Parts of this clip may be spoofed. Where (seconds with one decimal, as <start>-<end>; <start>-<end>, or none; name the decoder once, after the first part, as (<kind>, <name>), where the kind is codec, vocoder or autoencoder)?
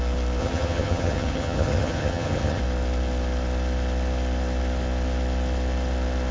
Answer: 0.4-2.6 (vocoder, HiFi-GAN)